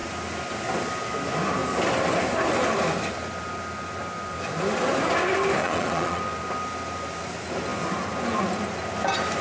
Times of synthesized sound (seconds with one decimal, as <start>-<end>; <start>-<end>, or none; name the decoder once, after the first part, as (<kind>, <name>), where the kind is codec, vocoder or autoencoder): 5.6-6.2 (vocoder, Vocos)